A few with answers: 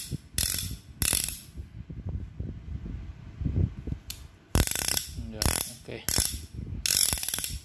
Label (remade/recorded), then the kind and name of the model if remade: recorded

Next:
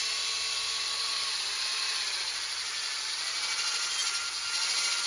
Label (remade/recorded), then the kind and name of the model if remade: recorded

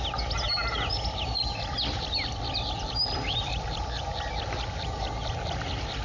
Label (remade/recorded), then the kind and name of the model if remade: recorded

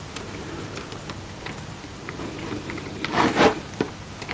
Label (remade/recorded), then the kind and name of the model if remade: remade, vocoder, BigVGAN v2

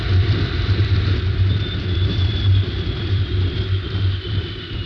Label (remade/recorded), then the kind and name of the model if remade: remade, vocoder, BigVGAN v2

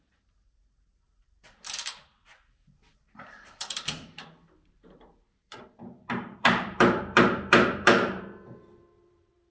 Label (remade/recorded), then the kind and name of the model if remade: remade, vocoder, BigVGAN v2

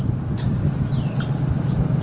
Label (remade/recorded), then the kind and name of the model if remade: remade, vocoder, BigVGAN v2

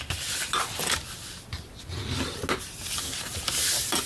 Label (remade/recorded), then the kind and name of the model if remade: recorded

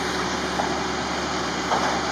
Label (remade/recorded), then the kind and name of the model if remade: remade, vocoder, BigVGAN v2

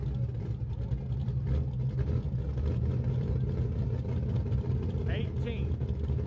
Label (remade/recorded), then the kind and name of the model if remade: recorded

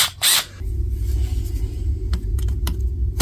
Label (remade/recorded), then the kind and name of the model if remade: recorded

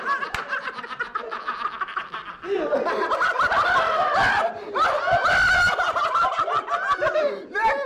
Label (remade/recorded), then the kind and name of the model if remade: remade, vocoder, BigVGAN v2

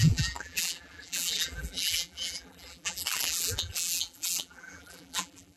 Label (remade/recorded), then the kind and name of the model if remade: remade, vocoder, BigVGAN v2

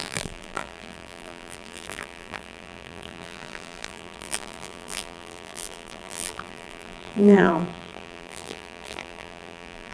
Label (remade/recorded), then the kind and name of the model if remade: remade, vocoder, BigVGAN v2